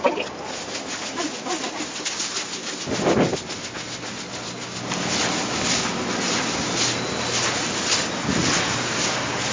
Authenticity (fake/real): real